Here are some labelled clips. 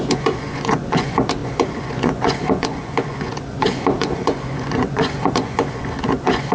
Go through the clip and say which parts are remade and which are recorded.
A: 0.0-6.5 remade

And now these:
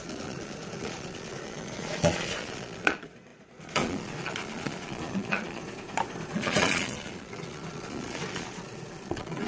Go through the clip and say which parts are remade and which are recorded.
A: 0.0-5.6 remade; 5.6-6.3 recorded; 6.3-9.5 remade